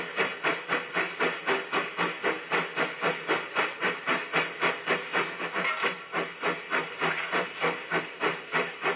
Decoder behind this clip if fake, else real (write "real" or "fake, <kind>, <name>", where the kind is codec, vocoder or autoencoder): real